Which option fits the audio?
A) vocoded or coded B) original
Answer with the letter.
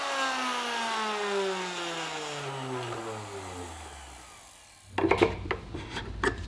B